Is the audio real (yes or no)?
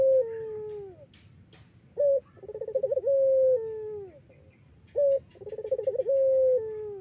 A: yes